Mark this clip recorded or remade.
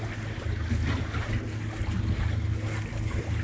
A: recorded